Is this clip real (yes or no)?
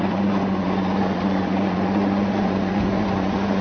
no